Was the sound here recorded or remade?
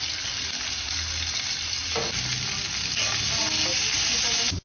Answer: recorded